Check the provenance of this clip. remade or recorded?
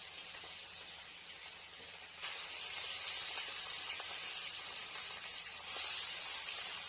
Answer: recorded